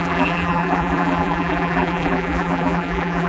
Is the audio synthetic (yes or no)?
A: yes